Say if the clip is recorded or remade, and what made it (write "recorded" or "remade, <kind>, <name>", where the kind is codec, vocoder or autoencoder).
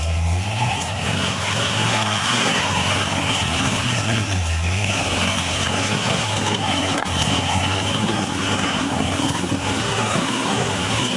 remade, codec, SNAC